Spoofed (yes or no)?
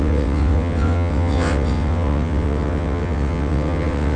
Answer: yes